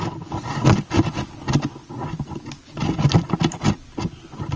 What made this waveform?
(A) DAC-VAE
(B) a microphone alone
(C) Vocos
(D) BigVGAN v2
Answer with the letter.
B